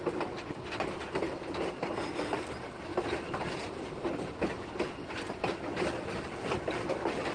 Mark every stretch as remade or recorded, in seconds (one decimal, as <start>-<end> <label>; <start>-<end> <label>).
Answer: 0.0-7.3 recorded